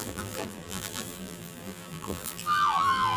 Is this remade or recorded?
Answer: remade